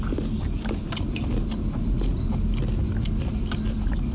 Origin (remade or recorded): recorded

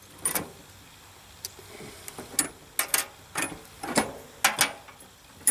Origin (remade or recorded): recorded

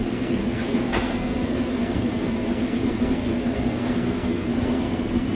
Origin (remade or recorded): remade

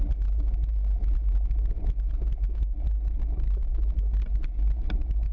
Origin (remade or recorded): recorded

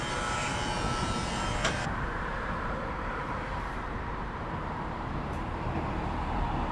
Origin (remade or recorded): remade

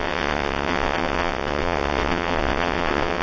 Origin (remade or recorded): remade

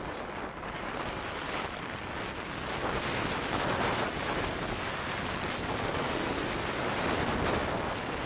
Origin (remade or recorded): recorded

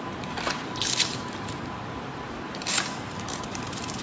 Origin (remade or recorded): remade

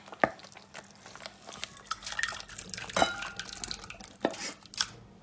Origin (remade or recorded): recorded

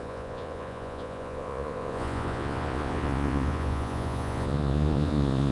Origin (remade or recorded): remade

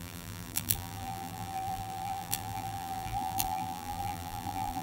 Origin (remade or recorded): remade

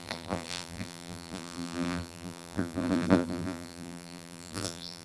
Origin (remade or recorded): remade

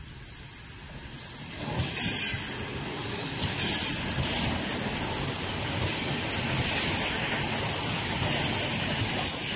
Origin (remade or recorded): recorded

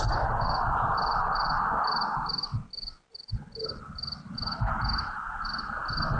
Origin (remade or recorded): recorded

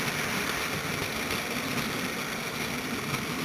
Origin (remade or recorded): recorded